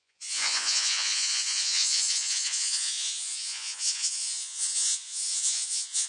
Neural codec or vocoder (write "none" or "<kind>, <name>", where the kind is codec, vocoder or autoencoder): vocoder, Vocos